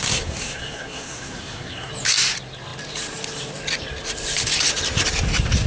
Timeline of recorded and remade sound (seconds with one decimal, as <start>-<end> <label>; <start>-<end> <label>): 0.0-1.9 remade; 1.9-5.7 recorded